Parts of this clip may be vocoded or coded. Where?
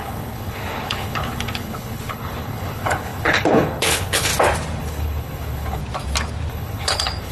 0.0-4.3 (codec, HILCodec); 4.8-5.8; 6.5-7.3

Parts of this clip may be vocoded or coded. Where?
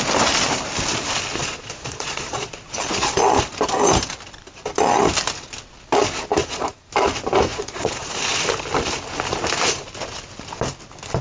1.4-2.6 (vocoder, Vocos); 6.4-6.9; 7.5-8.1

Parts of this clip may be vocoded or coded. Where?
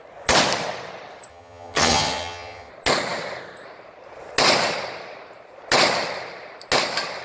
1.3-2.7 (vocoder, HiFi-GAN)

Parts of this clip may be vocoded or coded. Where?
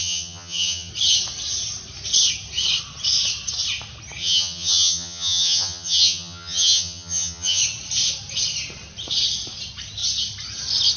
0.0-0.9 (vocoder, HiFi-GAN); 4.2-7.6